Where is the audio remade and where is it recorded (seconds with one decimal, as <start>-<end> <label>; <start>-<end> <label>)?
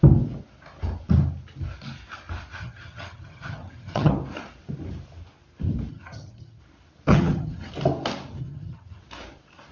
0.0-2.6 recorded; 2.6-4.1 remade; 4.1-5.9 recorded; 5.9-6.6 remade; 6.6-7.1 recorded; 7.1-7.7 remade; 7.7-8.4 recorded; 8.4-9.0 remade; 9.0-9.7 recorded